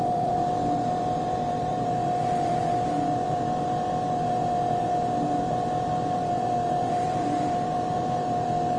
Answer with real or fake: fake